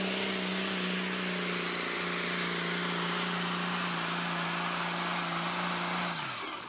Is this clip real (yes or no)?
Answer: yes